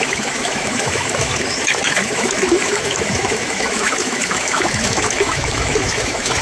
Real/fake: fake